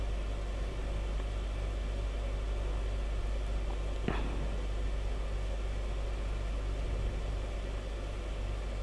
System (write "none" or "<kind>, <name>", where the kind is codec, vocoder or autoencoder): none